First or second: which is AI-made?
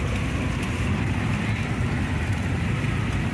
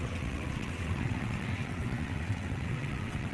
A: second